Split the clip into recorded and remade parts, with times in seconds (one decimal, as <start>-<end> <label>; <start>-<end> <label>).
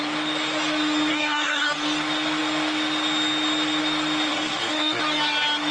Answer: 0.0-1.1 recorded; 1.1-1.7 remade; 1.7-4.3 recorded; 4.3-5.0 remade; 5.0-5.7 recorded